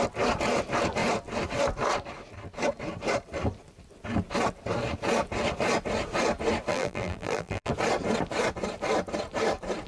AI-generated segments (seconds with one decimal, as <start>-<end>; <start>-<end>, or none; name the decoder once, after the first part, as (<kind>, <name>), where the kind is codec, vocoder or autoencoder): 6.7-7.7 (vocoder, BigVGAN v2)